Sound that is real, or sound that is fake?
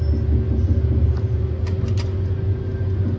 real